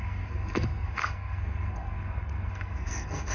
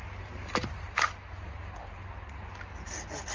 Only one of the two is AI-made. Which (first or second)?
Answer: first